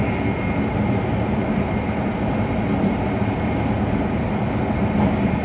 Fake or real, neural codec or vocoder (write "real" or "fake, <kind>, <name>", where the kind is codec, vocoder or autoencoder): real